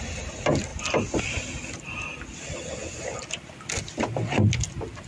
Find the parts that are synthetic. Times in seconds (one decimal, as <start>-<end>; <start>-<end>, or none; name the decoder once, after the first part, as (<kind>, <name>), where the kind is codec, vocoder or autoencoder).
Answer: none